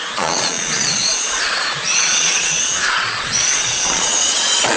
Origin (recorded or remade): remade